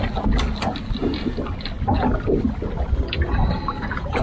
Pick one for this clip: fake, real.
real